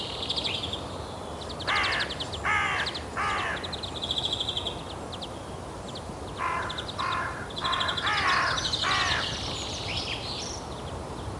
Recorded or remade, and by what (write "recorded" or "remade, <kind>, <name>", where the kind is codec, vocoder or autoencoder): recorded